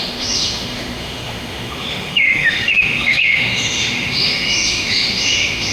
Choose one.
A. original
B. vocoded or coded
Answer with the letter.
B